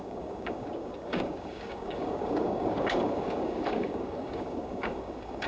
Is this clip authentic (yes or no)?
no